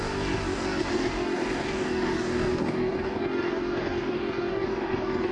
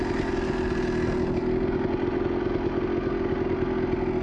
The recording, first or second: second